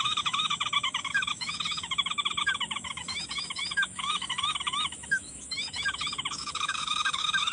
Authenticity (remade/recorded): remade